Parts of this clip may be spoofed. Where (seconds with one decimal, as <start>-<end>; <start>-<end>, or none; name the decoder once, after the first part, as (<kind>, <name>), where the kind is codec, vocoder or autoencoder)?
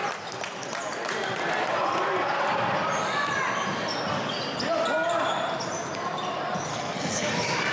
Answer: 6.7-7.3 (codec, SNAC)